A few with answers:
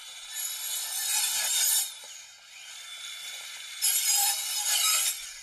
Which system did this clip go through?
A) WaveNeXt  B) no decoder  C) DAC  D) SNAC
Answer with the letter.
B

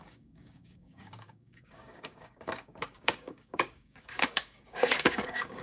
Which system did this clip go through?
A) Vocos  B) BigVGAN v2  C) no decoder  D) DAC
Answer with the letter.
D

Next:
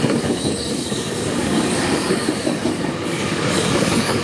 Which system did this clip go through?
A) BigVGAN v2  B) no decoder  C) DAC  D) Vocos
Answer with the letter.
C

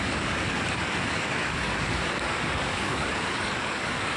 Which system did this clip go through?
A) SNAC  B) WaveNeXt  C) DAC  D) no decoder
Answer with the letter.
C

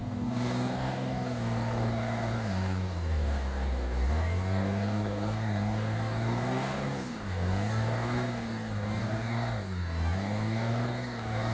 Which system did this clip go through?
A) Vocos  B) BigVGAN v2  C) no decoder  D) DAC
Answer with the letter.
D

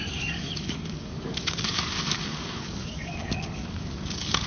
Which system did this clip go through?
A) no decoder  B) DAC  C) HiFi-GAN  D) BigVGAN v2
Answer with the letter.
B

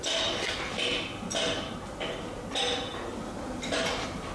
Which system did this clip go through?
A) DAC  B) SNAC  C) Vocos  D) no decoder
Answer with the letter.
D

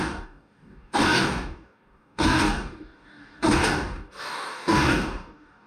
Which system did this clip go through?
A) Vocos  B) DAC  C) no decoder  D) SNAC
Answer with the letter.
B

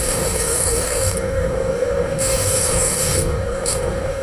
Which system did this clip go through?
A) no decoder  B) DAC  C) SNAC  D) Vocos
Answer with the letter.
B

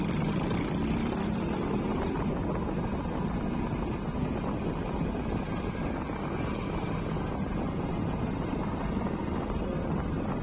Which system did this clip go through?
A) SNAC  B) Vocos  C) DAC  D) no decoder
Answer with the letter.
D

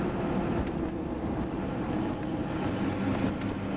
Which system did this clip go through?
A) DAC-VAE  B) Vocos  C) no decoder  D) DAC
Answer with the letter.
C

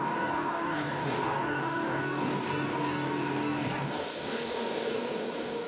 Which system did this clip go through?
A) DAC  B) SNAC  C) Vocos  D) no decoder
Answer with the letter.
A